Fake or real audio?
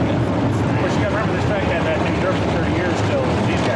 real